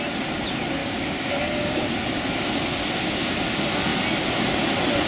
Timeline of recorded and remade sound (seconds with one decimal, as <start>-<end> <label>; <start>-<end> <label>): 0.0-0.8 recorded; 0.8-1.8 remade; 1.8-5.1 recorded